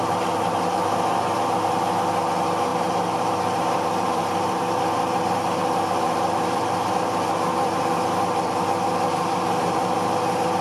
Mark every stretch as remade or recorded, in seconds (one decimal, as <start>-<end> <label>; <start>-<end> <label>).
0.0-10.6 remade